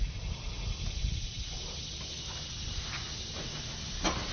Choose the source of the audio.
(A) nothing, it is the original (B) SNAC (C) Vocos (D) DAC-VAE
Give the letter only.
A